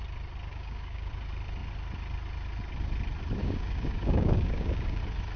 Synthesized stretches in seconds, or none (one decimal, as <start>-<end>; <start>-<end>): 0.5-1.1; 3.4-5.0